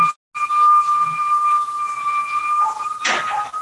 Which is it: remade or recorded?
recorded